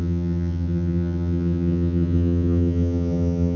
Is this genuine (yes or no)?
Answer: no